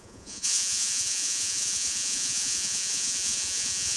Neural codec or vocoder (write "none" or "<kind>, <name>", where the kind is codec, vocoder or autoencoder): vocoder, Vocos